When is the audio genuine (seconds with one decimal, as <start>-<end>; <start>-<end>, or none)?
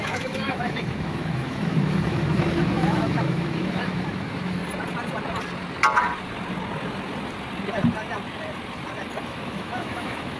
4.6-9.2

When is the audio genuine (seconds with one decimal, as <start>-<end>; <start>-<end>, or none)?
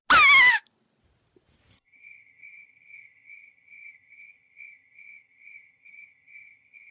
0.0-1.7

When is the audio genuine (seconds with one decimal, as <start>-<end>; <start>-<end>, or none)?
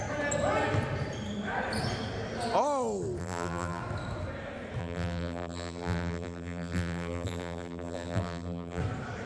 0.0-3.2; 3.8-4.8; 8.8-9.3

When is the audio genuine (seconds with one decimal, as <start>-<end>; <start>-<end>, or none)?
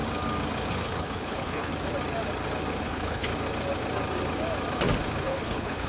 0.0-0.7; 1.7-2.8; 3.3-5.2